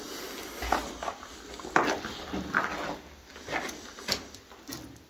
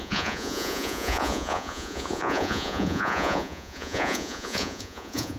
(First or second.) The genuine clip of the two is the first